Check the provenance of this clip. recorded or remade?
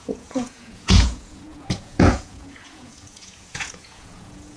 remade